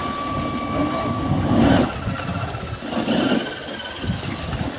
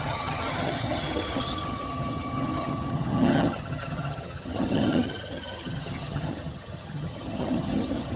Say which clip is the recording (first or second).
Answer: first